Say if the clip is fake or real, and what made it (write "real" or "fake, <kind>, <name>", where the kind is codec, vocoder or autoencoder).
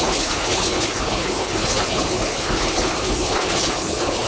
fake, codec, HILCodec